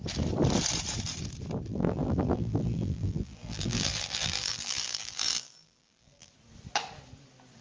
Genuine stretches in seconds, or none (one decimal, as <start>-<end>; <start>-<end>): 0.0-1.7; 6.3-7.6